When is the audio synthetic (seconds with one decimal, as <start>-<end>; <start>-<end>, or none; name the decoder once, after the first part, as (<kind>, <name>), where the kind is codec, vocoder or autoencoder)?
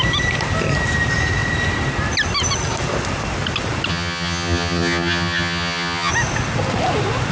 3.9-6.1 (vocoder, HiFi-GAN)